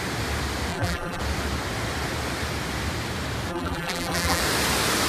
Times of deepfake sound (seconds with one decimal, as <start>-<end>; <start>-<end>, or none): 0.7-1.2; 3.5-4.4